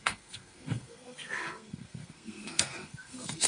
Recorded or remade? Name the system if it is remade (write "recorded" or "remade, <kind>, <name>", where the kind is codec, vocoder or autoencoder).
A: remade, codec, SNAC